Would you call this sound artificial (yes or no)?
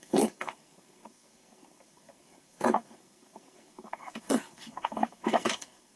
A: yes